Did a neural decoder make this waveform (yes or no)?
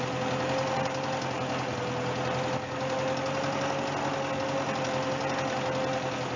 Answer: no